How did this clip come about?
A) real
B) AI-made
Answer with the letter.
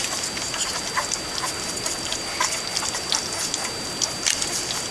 A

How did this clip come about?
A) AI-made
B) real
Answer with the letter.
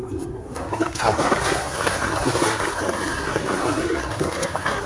A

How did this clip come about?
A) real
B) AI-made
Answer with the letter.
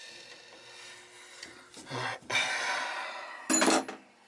A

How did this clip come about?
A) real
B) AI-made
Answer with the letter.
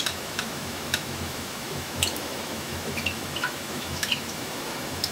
B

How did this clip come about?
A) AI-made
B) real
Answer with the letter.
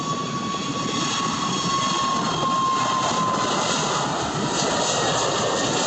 B